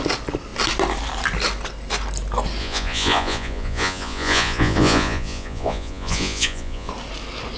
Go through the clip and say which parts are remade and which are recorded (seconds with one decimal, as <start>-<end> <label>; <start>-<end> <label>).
0.0-2.6 recorded; 2.6-6.9 remade; 6.9-7.6 recorded

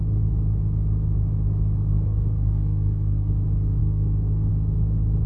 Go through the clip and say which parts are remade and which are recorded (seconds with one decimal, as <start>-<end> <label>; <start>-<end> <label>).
0.0-1.9 recorded; 1.9-3.3 remade; 3.3-3.8 recorded; 3.8-4.5 remade; 4.5-5.3 recorded

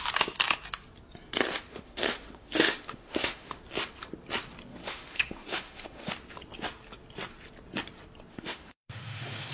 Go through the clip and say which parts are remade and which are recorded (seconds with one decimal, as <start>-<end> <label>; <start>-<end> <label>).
0.0-1.7 recorded; 1.7-3.6 remade; 3.6-4.7 recorded; 4.7-6.1 remade; 6.1-8.3 recorded; 8.3-9.5 remade

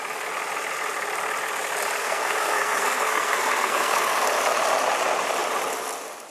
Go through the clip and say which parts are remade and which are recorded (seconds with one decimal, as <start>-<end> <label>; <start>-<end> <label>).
0.0-2.0 recorded; 2.0-4.2 remade; 4.2-6.3 recorded

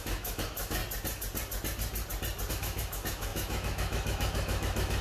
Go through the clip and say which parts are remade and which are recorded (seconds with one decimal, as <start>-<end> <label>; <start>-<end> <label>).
0.0-0.8 remade; 0.8-2.5 recorded; 2.5-5.0 remade

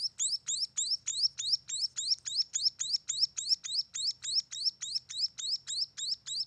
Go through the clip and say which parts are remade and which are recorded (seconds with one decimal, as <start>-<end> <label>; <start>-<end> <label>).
0.0-6.5 recorded

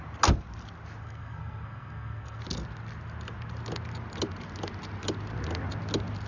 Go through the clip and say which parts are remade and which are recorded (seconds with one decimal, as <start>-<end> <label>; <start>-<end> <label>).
0.0-1.0 recorded; 1.0-2.4 remade; 2.4-6.3 recorded

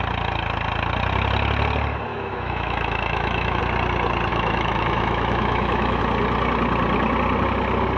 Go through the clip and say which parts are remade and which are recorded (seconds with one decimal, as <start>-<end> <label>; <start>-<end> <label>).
0.0-2.1 recorded; 2.1-3.6 remade; 3.6-4.3 recorded; 4.3-6.0 remade; 6.0-8.0 recorded